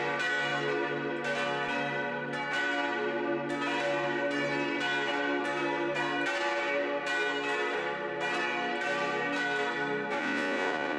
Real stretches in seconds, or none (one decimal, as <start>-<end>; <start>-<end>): 0.0-10.2